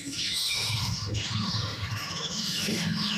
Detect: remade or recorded remade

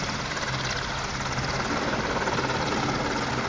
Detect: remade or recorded recorded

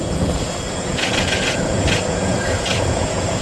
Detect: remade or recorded remade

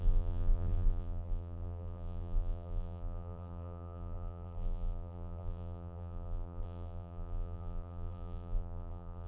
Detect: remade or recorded remade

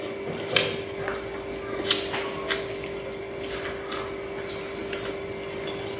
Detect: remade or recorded remade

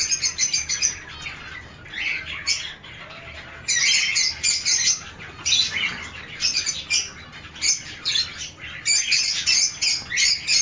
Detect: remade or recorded recorded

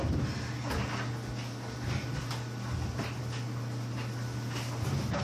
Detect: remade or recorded recorded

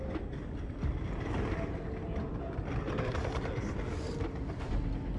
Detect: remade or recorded recorded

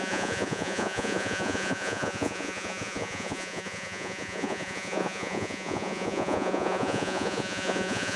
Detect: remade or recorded remade